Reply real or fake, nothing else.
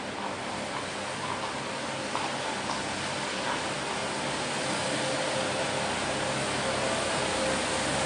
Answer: real